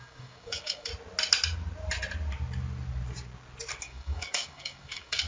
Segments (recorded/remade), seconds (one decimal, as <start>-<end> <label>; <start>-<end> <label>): 0.0-0.9 remade; 0.9-3.8 recorded; 3.8-5.3 remade